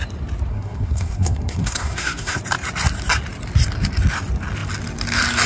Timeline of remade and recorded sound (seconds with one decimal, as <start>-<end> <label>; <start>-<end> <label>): 0.0-0.5 recorded; 0.5-2.4 remade; 2.4-5.5 recorded